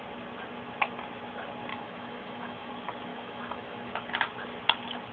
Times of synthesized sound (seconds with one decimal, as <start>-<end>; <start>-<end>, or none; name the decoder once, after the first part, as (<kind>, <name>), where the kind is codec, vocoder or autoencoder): 1.7-2.7 (autoencoder, DAC-VAE); 3.1-3.9